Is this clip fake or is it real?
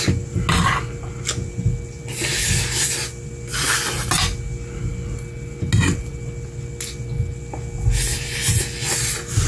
real